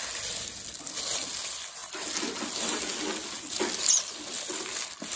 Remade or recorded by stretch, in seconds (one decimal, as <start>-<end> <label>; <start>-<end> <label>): 0.0-5.2 recorded